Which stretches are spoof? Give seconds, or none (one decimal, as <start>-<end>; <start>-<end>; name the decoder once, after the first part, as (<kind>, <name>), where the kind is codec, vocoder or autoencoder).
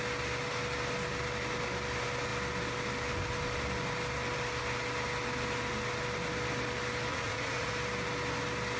7.1-7.7 (vocoder, Vocos)